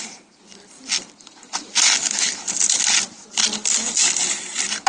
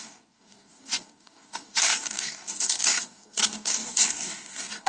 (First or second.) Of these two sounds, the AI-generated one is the second